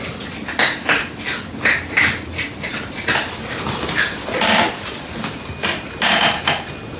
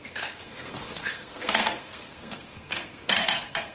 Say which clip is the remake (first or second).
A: second